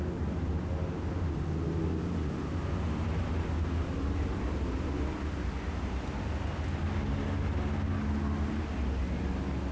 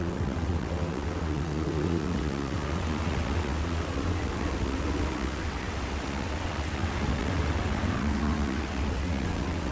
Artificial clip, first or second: second